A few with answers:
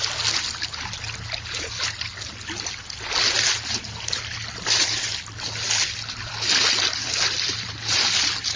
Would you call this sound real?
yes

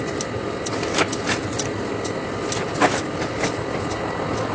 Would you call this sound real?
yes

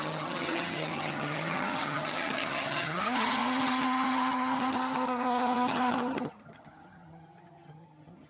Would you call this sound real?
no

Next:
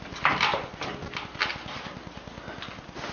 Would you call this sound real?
yes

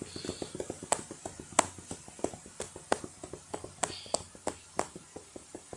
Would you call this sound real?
yes